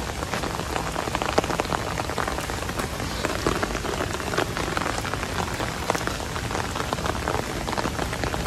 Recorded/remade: recorded